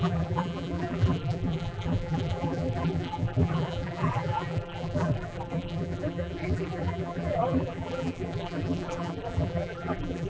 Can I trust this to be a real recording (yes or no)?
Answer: no